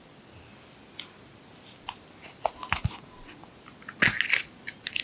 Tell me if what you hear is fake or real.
real